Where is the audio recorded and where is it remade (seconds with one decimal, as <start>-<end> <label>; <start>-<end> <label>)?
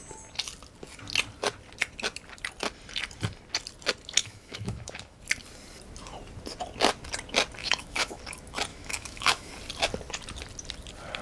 0.0-4.2 recorded; 4.2-5.2 remade; 5.2-7.6 recorded; 7.6-8.2 remade; 8.2-8.7 recorded; 8.7-9.5 remade; 9.5-11.2 recorded